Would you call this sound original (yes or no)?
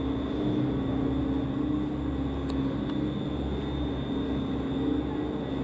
yes